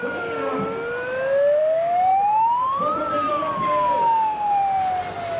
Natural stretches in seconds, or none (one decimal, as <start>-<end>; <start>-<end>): 0.5-1.6; 2.1-3.3; 4.6-5.4